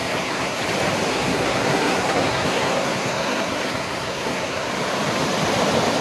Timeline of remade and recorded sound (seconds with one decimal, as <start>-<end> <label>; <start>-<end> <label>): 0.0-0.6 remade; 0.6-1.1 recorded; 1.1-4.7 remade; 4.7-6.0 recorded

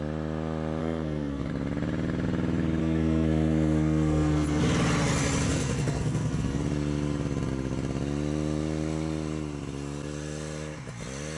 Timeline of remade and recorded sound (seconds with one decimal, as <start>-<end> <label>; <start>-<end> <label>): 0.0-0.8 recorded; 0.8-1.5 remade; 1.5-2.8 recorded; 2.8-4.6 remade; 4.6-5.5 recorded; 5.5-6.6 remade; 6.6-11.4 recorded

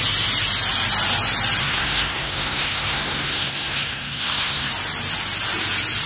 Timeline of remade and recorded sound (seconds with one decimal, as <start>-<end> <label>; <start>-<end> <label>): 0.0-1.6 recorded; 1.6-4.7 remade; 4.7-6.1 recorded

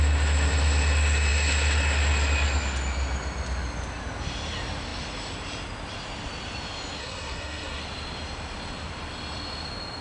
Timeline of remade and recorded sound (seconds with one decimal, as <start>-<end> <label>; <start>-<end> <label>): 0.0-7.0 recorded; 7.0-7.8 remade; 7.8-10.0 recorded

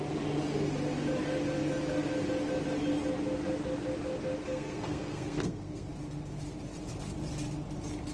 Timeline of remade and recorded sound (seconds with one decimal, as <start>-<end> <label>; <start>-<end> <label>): 0.0-4.4 recorded; 4.4-5.9 remade; 5.9-8.1 recorded

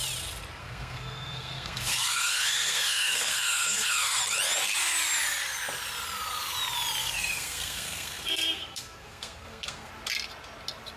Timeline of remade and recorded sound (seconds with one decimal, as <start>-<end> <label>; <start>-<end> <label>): 0.0-0.6 recorded; 0.6-4.2 remade; 4.2-7.0 recorded; 7.0-9.9 remade; 9.9-11.0 recorded

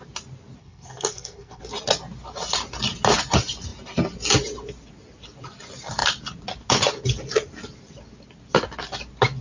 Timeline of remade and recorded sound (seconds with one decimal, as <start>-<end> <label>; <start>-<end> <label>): 0.0-0.6 recorded; 0.6-1.6 remade; 1.6-9.4 recorded